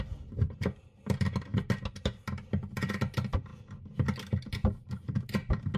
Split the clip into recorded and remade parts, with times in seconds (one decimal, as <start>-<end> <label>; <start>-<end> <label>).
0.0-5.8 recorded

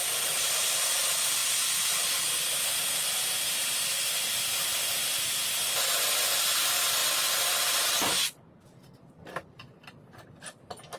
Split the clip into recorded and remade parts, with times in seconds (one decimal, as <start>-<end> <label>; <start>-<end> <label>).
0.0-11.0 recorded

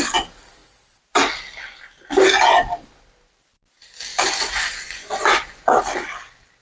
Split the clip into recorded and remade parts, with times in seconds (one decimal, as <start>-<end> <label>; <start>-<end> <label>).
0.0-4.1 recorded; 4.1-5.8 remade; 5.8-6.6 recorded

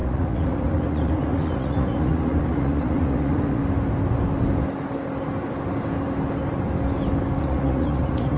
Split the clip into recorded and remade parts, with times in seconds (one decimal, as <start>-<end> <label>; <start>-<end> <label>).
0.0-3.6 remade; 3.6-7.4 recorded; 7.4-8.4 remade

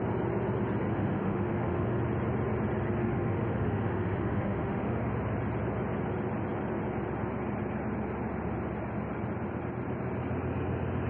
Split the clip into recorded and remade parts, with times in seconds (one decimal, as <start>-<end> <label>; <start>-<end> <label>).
0.0-0.9 recorded; 0.9-2.0 remade; 2.0-3.0 recorded; 3.0-5.1 remade; 5.1-11.1 recorded

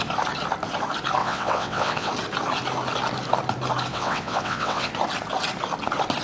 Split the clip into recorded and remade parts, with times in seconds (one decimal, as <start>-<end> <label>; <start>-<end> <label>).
0.0-1.2 recorded; 1.2-2.1 remade; 2.1-3.9 recorded; 3.9-4.9 remade; 4.9-6.2 recorded